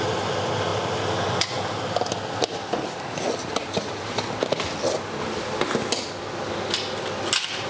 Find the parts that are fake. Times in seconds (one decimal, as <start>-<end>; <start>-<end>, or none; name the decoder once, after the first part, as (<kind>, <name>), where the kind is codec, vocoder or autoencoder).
none